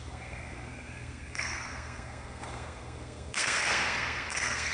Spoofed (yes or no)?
yes